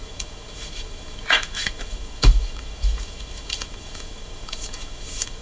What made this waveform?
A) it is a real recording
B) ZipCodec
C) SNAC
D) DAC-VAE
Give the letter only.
D